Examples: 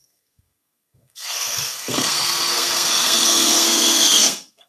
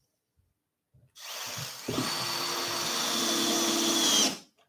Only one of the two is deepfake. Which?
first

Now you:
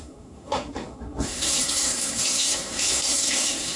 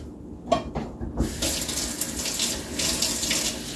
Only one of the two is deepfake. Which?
first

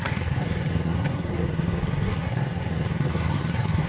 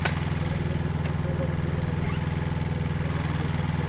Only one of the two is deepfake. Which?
first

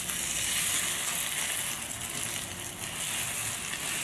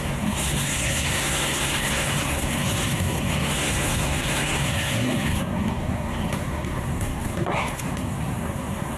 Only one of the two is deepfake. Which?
second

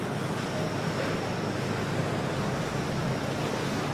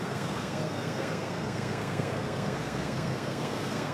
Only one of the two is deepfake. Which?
second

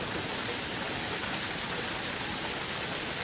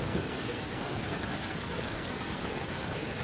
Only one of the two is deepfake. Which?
second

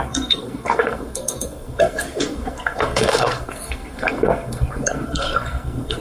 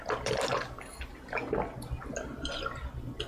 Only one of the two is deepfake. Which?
first